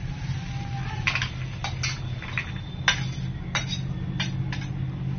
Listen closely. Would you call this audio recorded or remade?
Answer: recorded